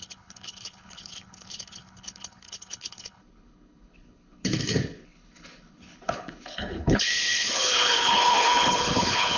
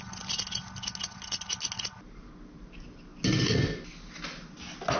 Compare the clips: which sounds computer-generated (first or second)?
first